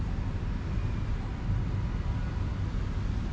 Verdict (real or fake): real